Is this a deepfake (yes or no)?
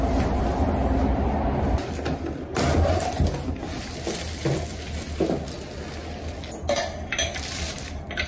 no